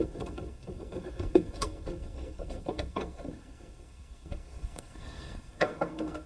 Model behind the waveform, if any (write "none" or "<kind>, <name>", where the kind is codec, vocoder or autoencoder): codec, SNAC